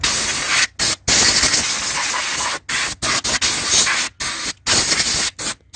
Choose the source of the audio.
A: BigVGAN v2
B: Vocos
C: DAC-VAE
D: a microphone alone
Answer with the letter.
D